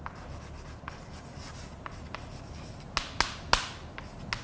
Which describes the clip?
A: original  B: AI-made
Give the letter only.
A